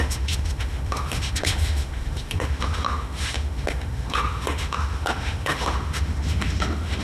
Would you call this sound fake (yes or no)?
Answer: yes